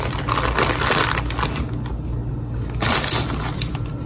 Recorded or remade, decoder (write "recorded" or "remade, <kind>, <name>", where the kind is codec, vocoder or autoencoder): recorded